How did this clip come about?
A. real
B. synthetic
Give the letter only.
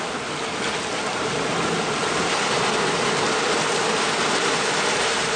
A